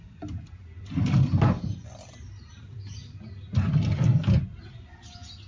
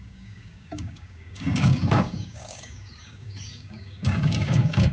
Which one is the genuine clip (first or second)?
first